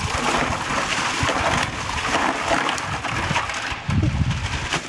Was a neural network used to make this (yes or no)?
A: no